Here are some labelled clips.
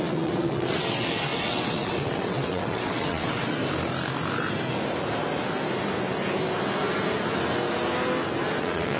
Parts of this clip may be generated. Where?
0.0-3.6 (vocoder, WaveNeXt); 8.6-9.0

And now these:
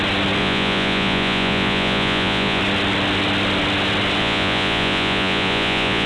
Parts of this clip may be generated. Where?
0.4-2.6 (vocoder, Vocos); 4.2-6.1

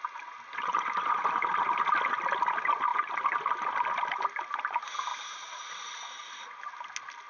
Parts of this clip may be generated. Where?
5.1-5.7 (vocoder, BigVGAN v2)